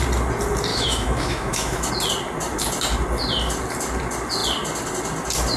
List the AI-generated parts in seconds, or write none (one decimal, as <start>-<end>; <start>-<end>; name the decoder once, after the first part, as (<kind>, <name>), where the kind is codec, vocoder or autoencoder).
0.7-1.9 (autoencoder, DAC-VAE)